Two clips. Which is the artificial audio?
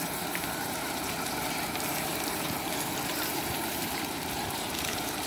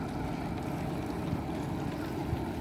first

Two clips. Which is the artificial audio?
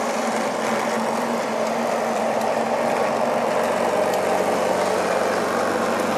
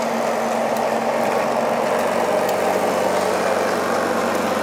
first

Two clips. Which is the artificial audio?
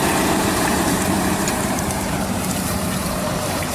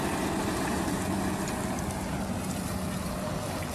first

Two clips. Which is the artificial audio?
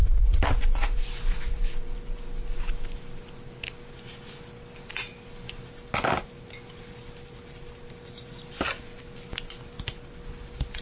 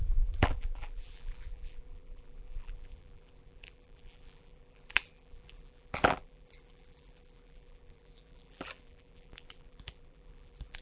second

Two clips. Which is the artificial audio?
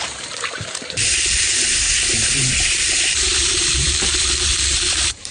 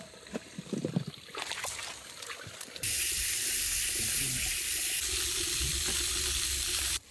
first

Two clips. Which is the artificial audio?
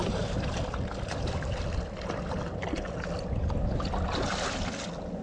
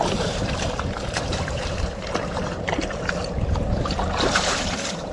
second